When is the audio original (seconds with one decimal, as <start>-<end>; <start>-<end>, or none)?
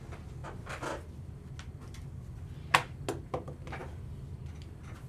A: 0.0-5.1